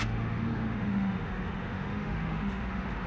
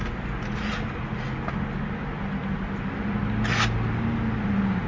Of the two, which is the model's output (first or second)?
first